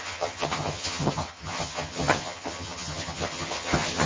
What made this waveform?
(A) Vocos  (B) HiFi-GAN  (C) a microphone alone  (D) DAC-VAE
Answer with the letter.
B